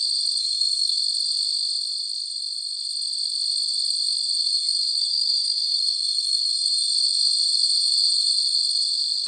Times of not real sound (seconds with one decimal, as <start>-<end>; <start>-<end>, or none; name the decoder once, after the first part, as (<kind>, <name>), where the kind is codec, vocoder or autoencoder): 0.4-1.0 (codec, SNAC); 4.4-6.9

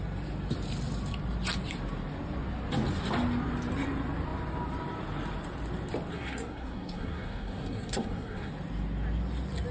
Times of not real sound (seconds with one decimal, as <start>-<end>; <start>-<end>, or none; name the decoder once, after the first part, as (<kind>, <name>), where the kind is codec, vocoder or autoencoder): 6.1-8.5 (codec, SNAC)

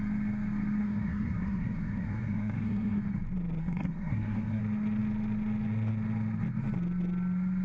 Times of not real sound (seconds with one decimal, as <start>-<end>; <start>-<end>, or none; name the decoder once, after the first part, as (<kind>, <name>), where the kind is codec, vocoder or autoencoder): 0.8-3.0 (codec, SNAC); 3.6-4.6

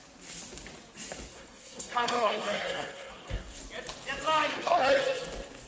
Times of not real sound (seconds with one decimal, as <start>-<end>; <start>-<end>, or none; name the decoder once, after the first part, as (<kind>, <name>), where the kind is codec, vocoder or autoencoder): 1.3-3.6 (codec, SNAC); 4.5-5.0

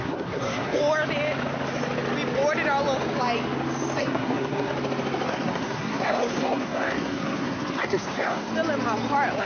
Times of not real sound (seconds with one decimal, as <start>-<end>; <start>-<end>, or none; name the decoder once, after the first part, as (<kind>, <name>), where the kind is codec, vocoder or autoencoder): 0.0-0.8 (codec, SNAC); 4.0-4.7; 5.3-8.5

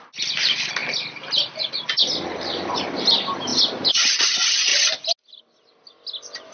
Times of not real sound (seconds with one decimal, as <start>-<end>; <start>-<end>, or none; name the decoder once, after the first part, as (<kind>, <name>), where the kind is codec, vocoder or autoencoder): none